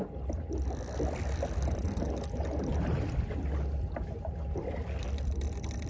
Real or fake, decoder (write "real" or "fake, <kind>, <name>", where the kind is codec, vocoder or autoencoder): real